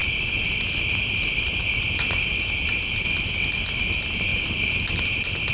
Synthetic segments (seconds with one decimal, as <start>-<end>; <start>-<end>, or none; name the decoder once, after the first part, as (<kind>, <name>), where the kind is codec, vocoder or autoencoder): none